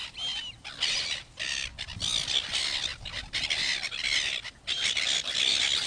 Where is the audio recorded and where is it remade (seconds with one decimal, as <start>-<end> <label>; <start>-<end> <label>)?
0.0-5.9 recorded